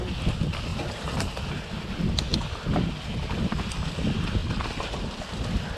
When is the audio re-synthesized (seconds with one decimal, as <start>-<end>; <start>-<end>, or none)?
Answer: none

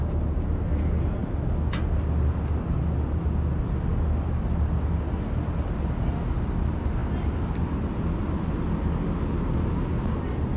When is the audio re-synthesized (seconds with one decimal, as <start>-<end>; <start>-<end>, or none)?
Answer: none

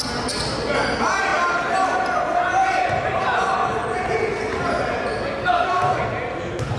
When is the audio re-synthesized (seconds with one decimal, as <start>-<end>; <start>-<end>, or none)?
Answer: 5.4-6.0

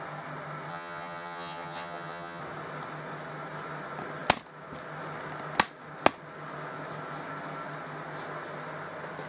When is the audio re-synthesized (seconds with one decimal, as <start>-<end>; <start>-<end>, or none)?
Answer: 0.7-2.4

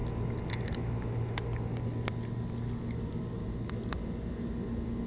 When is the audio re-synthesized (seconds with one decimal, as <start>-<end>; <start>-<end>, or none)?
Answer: none

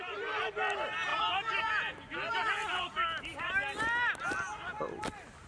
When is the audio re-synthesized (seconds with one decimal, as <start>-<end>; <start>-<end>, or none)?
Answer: none